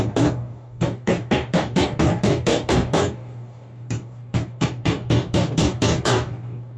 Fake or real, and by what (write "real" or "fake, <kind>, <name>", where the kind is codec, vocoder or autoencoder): fake, codec, DAC